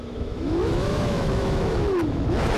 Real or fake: fake